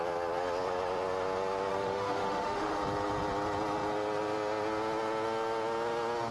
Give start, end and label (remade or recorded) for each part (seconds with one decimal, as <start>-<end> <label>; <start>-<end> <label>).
0.0-1.7 recorded; 1.7-2.8 remade; 2.8-6.3 recorded